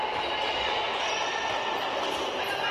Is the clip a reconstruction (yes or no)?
no